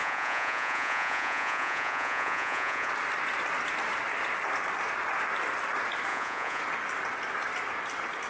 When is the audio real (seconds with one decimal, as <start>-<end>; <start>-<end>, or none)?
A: 2.9-6.1; 6.6-8.3